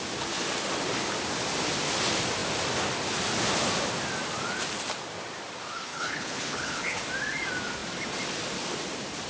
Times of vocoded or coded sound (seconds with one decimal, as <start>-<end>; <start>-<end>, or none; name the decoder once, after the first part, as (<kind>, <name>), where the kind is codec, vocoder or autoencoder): 5.9-7.0 (codec, HILCodec)